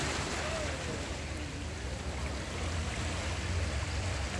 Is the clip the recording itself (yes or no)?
yes